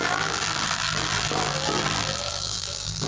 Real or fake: fake